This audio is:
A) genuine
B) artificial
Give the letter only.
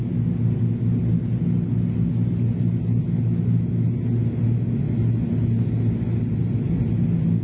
A